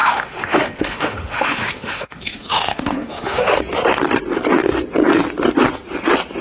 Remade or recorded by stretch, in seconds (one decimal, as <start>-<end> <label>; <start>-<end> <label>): 0.0-3.6 remade; 3.6-6.4 recorded